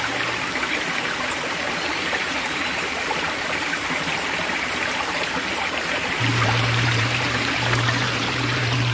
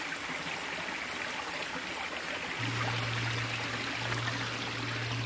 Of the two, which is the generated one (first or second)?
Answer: first